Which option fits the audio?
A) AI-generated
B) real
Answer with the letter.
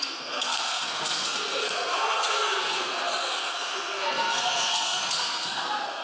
A